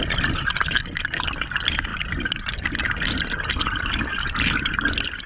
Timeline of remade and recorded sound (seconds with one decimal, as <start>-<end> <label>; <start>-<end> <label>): 0.0-5.3 recorded